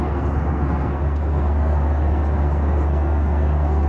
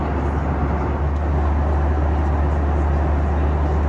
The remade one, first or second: first